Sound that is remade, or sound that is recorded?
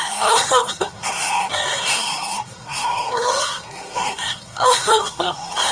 remade